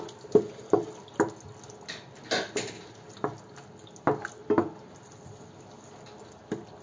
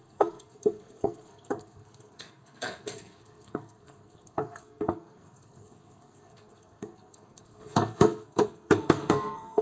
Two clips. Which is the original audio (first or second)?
first